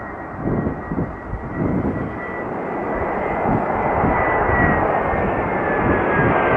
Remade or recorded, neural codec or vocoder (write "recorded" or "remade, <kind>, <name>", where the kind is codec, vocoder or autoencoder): recorded